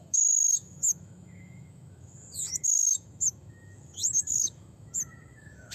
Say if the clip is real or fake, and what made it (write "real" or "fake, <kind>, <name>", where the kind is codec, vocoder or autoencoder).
fake, autoencoder, DAC-VAE